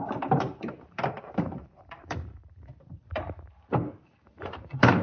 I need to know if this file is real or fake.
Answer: fake